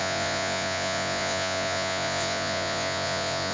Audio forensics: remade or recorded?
remade